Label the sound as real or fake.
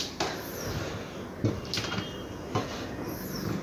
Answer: real